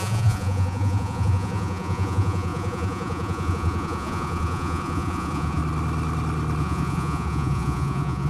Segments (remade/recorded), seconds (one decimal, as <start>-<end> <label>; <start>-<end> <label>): 0.0-5.6 remade; 5.6-6.6 recorded; 6.6-8.3 remade